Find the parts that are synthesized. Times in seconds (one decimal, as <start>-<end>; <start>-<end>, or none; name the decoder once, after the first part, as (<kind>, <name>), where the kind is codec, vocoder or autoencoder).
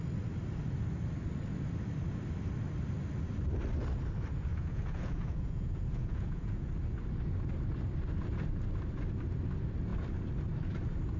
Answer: 4.5-6.7 (vocoder, Vocos)